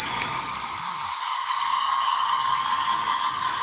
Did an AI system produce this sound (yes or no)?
yes